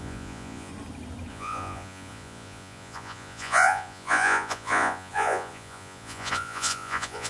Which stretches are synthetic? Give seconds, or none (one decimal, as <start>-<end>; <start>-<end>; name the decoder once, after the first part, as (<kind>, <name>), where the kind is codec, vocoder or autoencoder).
0.0-0.7 (vocoder, Vocos); 1.3-7.3